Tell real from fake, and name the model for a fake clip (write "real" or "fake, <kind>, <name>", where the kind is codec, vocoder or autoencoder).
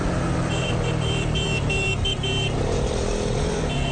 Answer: fake, vocoder, BigVGAN v2